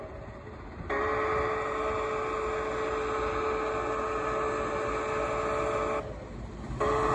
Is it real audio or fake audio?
real